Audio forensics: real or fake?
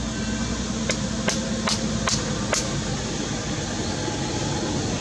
real